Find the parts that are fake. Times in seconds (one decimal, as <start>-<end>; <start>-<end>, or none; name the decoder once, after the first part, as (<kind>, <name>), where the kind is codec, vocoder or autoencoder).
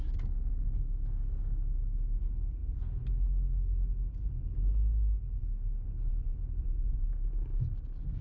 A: none